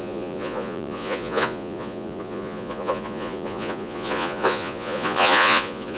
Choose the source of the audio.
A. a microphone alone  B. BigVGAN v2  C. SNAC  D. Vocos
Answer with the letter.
D